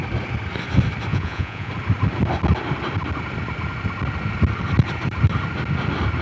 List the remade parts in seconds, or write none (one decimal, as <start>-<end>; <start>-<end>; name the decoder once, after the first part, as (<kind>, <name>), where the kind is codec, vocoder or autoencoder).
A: 1.1-1.7 (vocoder, Vocos)